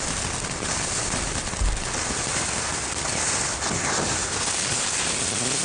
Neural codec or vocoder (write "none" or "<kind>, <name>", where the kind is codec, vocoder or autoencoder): none